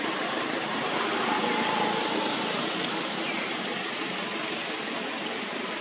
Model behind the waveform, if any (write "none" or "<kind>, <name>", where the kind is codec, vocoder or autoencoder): none